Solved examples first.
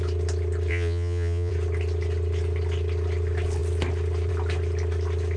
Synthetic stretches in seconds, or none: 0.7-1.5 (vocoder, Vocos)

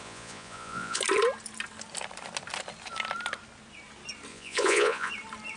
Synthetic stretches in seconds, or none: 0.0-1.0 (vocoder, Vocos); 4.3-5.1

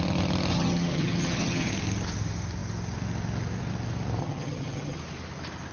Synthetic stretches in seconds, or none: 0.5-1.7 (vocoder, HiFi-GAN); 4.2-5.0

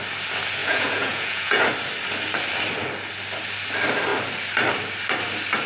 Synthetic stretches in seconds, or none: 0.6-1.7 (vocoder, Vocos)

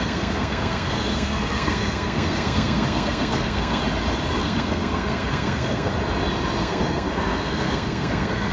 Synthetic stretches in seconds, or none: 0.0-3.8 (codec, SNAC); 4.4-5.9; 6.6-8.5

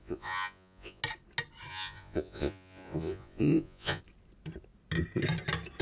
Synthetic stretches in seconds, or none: 0.0-1.0 (vocoder, Vocos); 1.7-4.0

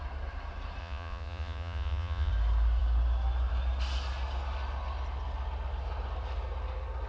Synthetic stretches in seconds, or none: 0.8-2.3 (vocoder, Vocos)